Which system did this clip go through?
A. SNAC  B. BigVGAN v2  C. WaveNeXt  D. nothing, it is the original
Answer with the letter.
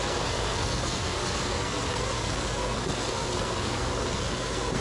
A